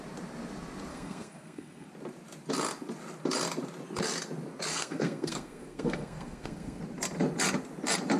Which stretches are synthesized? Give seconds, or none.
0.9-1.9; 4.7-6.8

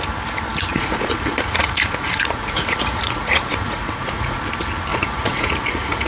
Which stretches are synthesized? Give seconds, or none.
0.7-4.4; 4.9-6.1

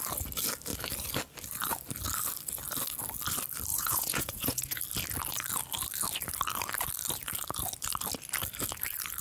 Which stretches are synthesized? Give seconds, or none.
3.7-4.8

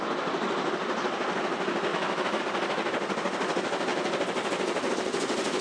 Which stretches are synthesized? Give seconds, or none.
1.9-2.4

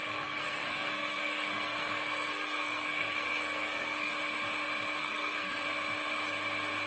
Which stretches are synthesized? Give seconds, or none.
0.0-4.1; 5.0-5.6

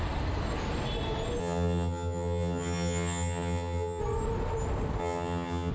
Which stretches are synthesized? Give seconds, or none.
1.4-4.0; 5.0-5.7